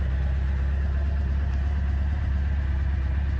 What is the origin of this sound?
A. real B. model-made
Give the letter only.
A